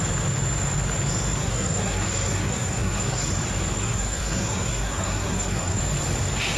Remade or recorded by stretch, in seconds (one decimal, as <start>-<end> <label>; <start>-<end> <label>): 0.0-1.4 recorded; 1.4-3.3 remade; 3.3-3.8 recorded; 3.8-5.8 remade; 5.8-6.6 recorded